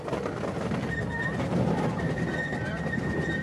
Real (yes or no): yes